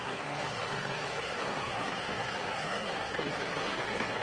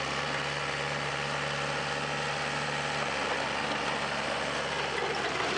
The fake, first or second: first